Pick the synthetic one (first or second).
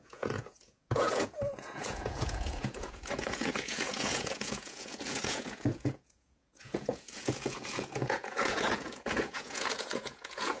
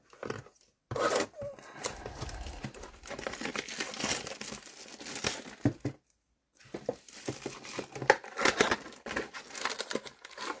first